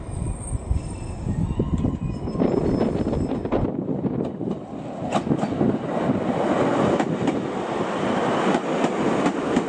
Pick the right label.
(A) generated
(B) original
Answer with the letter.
B